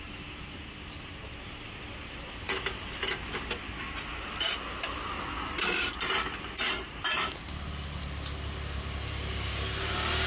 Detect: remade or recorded recorded